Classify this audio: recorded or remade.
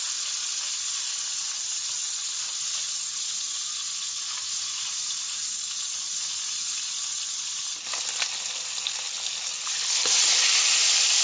recorded